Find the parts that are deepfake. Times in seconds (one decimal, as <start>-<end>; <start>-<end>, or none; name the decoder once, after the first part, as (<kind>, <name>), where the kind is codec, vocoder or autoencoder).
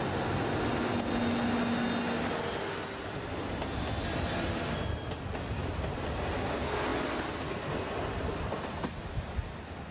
none